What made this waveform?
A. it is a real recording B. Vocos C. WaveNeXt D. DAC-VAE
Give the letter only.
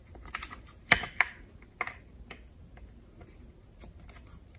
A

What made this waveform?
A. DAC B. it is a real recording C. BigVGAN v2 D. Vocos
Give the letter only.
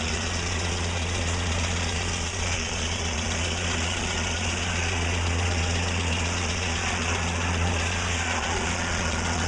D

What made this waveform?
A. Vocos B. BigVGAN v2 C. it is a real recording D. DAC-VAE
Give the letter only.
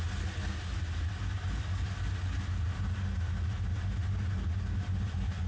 C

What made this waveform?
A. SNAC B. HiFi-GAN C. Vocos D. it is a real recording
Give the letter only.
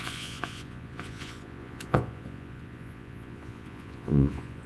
C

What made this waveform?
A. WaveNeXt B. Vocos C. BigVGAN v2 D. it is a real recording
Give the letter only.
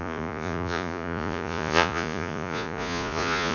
B